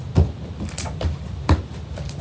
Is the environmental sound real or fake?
real